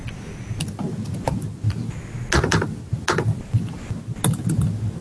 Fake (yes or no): no